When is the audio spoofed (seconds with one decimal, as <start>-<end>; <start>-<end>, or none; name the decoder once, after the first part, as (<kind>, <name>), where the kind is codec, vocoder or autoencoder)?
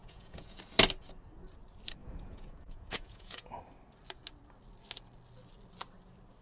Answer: 0.0-0.6 (vocoder, Vocos); 2.0-3.6